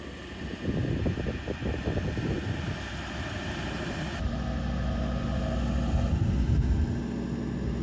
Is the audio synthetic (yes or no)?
no